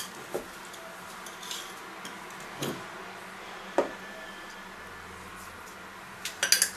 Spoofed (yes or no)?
no